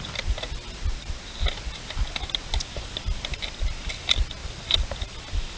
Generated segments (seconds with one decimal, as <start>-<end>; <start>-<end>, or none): none